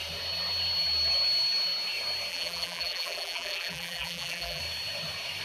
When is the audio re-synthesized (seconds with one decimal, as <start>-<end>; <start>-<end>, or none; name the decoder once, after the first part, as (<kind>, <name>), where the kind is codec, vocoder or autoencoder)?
2.3-4.6 (vocoder, BigVGAN v2)